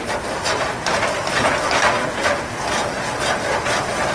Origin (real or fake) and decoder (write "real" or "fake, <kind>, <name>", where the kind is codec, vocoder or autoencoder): real